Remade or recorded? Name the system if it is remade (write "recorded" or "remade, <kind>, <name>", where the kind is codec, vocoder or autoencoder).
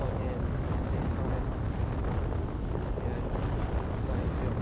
recorded